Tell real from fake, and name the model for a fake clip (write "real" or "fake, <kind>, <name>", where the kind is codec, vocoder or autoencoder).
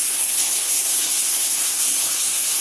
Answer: fake, codec, SNAC